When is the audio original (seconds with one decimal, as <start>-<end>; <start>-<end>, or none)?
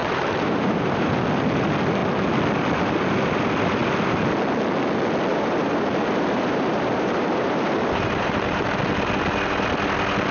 1.1-5.3; 8.8-10.3